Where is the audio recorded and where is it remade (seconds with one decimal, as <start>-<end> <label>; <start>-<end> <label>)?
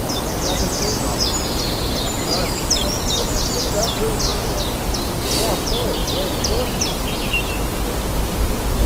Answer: 0.0-8.9 recorded